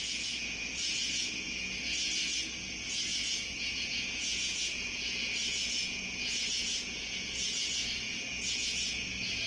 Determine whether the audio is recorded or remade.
remade